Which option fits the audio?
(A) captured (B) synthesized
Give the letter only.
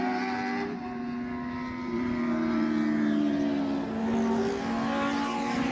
A